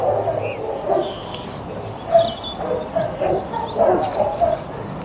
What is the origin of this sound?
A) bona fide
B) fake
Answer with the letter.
A